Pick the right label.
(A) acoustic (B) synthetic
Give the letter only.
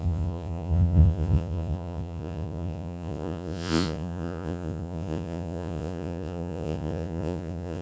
B